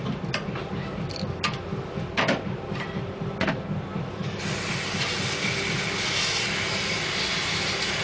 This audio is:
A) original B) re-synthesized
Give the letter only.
A